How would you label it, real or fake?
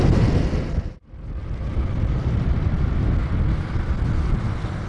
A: real